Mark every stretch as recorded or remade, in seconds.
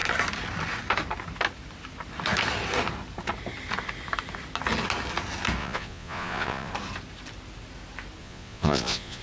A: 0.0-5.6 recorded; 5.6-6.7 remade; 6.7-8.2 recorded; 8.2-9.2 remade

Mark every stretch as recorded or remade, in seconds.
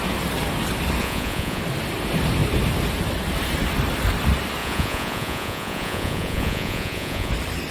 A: 0.0-1.0 recorded; 1.0-1.6 remade; 1.6-4.6 recorded; 4.6-7.3 remade; 7.3-7.7 recorded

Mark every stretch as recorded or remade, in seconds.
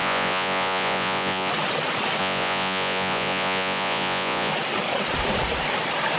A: 0.0-1.5 remade; 1.5-2.2 recorded; 2.2-4.5 remade; 4.5-6.2 recorded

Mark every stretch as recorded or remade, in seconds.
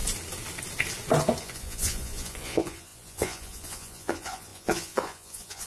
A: 0.0-1.4 recorded; 1.4-5.7 remade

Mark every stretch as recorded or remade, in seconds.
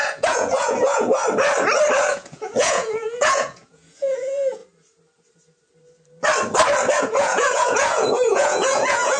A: 0.0-1.2 remade; 1.2-2.1 recorded; 2.1-4.6 remade; 4.6-7.0 recorded; 7.0-9.2 remade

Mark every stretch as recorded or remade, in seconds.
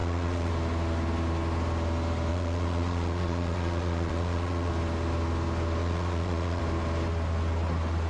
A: 0.0-0.5 remade; 0.5-2.3 recorded; 2.3-4.7 remade; 4.7-5.8 recorded; 5.8-6.6 remade; 6.6-8.1 recorded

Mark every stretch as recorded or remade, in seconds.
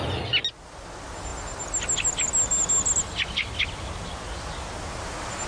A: 0.0-5.5 recorded